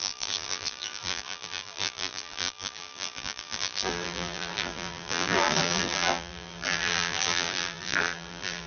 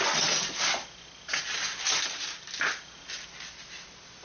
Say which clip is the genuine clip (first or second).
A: second